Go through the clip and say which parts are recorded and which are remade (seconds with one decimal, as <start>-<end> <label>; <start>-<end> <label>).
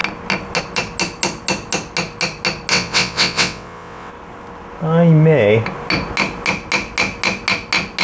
0.0-2.7 recorded; 2.7-4.1 remade; 4.1-8.0 recorded